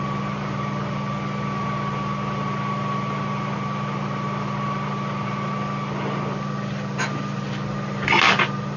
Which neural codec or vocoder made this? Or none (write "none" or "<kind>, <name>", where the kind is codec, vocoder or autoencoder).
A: none